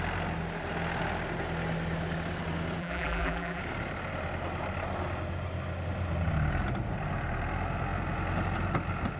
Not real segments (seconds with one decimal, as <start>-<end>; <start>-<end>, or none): 2.8-3.6